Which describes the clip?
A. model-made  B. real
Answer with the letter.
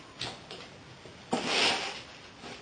B